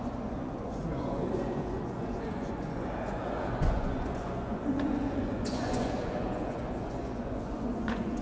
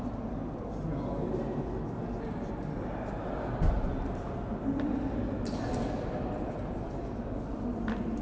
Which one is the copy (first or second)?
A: first